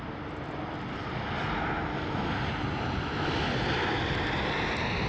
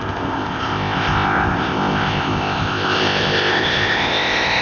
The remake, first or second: second